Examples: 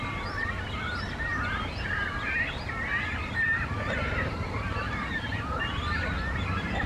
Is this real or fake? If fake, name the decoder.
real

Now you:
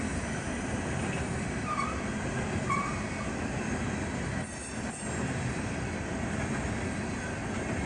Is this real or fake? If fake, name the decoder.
real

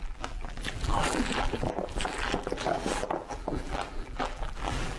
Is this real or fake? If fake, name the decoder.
fake, vocoder, BigVGAN v2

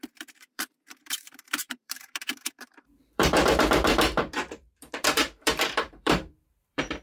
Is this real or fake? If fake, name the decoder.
fake, vocoder, BigVGAN v2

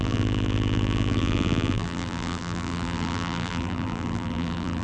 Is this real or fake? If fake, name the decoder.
fake, vocoder, BigVGAN v2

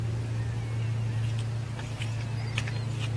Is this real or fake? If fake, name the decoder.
real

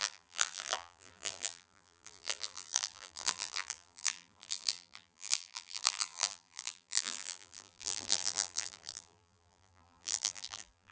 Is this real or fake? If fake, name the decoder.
fake, vocoder, BigVGAN v2